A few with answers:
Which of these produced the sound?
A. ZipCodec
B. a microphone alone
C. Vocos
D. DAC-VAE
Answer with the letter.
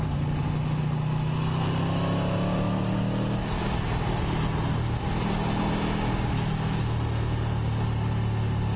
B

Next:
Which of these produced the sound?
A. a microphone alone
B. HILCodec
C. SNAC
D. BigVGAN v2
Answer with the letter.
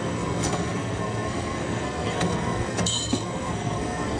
C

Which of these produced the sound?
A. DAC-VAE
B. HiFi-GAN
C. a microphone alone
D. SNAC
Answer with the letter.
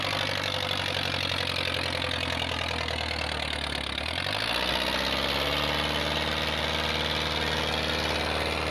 C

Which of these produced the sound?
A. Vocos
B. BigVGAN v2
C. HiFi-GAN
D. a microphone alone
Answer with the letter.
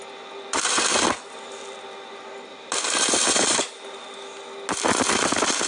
D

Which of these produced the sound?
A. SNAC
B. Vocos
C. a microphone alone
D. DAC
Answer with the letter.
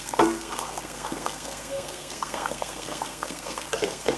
A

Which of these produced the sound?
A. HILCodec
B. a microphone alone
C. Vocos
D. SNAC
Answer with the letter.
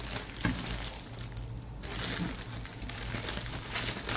B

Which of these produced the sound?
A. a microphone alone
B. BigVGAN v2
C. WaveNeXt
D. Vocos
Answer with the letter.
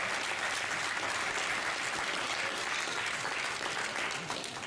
B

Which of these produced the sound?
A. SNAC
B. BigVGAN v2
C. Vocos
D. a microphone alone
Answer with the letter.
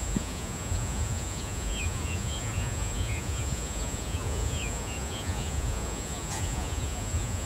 C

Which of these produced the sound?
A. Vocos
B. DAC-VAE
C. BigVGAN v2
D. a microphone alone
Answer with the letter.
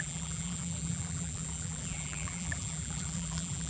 C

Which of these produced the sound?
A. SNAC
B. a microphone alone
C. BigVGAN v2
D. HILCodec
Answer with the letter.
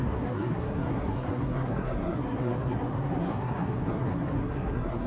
A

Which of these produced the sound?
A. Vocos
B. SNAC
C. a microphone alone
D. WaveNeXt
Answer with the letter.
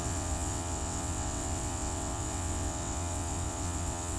D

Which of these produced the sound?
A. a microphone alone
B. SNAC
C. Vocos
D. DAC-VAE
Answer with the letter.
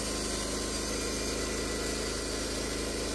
A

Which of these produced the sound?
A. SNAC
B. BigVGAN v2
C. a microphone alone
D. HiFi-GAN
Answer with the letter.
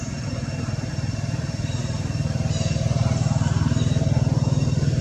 B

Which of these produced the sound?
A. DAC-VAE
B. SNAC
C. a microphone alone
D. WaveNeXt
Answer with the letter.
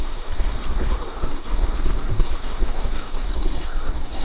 B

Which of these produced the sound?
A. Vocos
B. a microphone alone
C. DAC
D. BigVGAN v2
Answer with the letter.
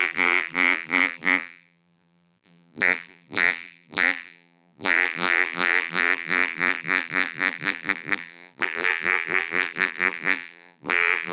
D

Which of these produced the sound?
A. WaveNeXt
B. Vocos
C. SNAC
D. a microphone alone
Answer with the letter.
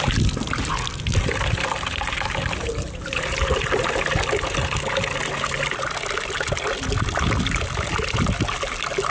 D